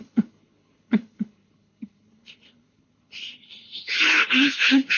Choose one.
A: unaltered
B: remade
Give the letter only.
B